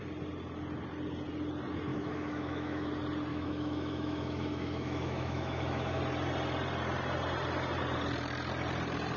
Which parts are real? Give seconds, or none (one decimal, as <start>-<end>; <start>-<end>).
0.0-1.9; 2.9-3.3; 6.0-9.2